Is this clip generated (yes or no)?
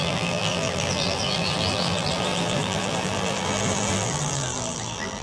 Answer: yes